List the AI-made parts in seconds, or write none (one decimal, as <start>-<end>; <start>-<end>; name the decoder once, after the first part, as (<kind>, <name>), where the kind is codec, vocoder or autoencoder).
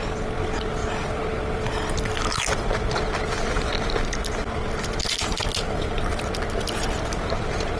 none